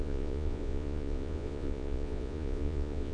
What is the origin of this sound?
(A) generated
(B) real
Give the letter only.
A